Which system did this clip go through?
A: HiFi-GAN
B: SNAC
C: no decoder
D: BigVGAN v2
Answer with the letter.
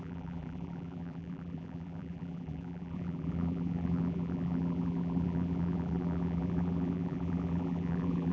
D